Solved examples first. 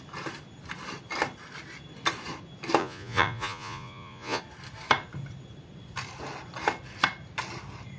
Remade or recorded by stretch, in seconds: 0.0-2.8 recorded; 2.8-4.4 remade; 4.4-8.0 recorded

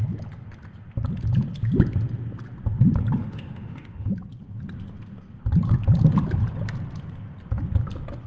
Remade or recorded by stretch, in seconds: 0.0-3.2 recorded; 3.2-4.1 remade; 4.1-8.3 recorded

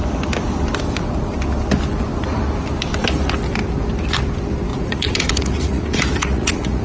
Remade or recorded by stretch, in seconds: 0.0-4.7 recorded; 4.7-6.8 remade

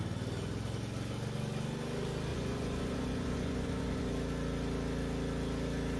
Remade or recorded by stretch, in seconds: 0.0-2.3 recorded; 2.3-4.1 remade; 4.1-6.0 recorded

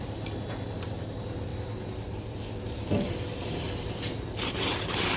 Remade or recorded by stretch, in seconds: 0.0-1.5 recorded; 1.5-4.6 remade; 4.6-5.2 recorded

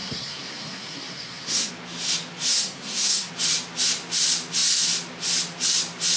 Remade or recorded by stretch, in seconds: 0.0-1.7 remade; 1.7-2.5 recorded; 2.5-3.3 remade; 3.3-6.2 recorded

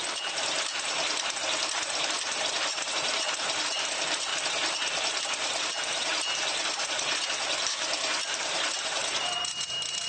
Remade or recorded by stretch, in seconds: 0.0-1.4 remade; 1.4-2.0 recorded; 2.0-4.3 remade; 4.3-5.2 recorded; 5.2-6.1 remade; 6.1-7.6 recorded; 7.6-9.0 remade; 9.0-10.1 recorded

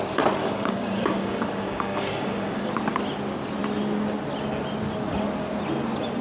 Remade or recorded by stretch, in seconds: 0.0-0.4 recorded; 0.4-2.7 remade; 2.7-6.2 recorded